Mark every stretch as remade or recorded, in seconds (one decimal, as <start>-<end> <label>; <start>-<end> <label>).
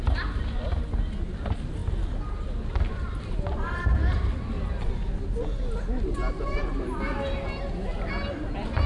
0.0-8.9 recorded